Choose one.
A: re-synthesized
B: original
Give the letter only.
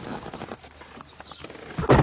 B